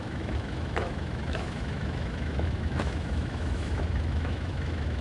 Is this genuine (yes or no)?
no